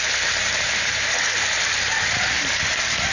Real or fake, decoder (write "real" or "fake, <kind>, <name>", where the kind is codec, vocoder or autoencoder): real